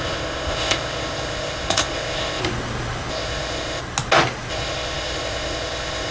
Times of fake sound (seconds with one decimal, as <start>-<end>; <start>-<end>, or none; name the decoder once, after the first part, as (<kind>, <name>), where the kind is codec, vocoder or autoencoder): 0.0-2.4 (codec, ZipCodec); 3.1-3.8; 4.5-6.1